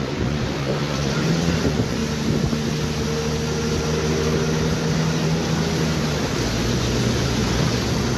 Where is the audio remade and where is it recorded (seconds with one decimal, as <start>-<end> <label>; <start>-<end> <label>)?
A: 0.0-2.0 remade; 2.0-6.7 recorded; 6.7-8.2 remade